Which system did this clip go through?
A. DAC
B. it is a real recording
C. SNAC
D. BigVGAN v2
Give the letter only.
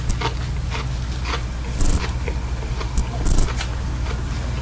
B